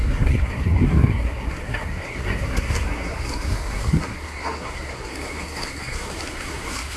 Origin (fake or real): fake